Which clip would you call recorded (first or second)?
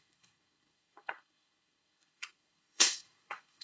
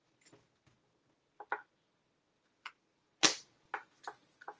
second